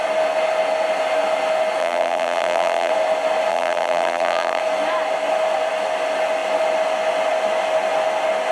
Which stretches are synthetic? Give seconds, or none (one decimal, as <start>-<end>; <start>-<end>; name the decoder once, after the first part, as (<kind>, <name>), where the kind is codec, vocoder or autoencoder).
1.8-2.9 (vocoder, BigVGAN v2); 3.5-4.6